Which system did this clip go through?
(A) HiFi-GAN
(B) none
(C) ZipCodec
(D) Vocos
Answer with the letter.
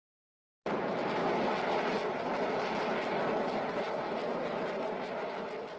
B